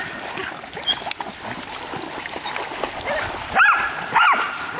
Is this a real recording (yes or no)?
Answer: yes